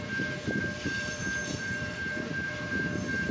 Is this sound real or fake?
fake